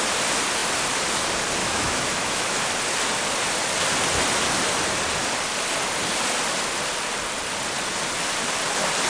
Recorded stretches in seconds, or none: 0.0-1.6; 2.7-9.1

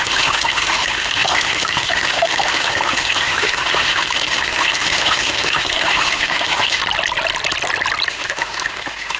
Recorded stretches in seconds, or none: 6.8-8.1

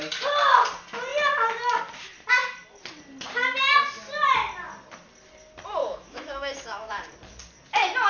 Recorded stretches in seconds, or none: 0.0-5.8; 6.9-8.1